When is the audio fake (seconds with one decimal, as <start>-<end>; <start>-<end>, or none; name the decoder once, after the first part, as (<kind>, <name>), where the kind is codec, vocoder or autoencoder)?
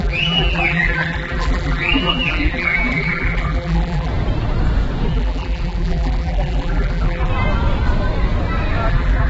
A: 0.0-4.1 (vocoder, BigVGAN v2); 5.1-7.3; 8.9-9.3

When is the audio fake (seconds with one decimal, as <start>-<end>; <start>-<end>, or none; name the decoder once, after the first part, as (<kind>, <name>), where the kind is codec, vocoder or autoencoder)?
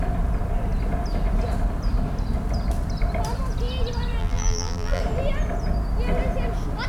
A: 4.2-5.0 (vocoder, BigVGAN v2)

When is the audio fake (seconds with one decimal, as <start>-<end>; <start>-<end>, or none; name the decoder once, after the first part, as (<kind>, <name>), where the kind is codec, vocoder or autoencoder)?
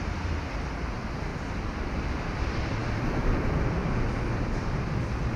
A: 0.0-1.3 (vocoder, BigVGAN v2); 1.9-3.8; 4.6-5.4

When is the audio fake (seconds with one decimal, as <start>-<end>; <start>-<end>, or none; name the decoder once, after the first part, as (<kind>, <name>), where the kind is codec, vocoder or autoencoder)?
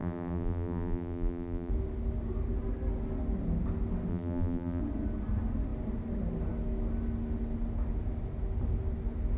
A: 0.0-1.7 (vocoder, BigVGAN v2); 4.1-4.8